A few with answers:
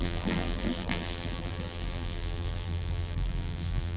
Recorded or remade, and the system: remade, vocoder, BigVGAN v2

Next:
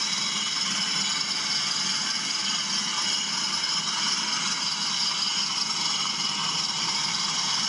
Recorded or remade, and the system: recorded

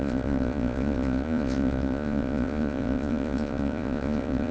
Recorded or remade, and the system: remade, vocoder, Vocos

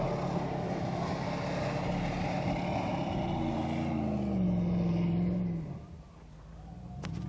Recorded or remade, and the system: recorded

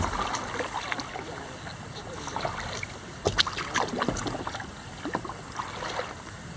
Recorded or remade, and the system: recorded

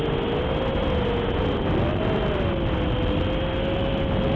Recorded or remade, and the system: recorded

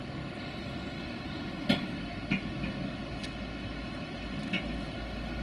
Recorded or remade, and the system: recorded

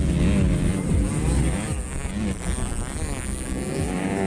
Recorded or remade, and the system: recorded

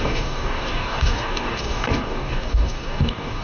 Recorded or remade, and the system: remade, codec, DAC